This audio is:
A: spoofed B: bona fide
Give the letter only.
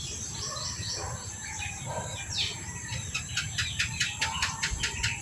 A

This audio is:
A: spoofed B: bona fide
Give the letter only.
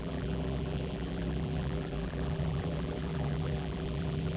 A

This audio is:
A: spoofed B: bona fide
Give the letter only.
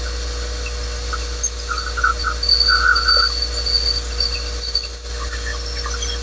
B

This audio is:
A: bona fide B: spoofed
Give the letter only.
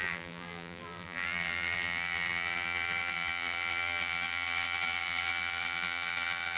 B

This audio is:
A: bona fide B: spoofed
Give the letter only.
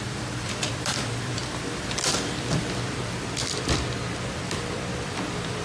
B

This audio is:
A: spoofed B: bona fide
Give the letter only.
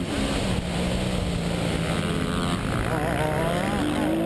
B